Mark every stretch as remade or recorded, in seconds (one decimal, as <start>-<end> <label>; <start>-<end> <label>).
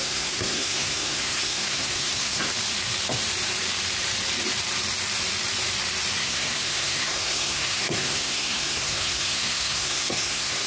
0.0-2.5 remade; 2.5-6.2 recorded; 6.2-10.7 remade